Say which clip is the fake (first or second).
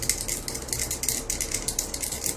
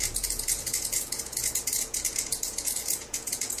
second